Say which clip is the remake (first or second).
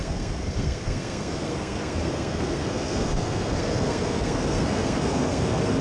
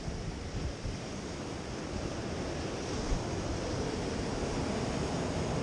first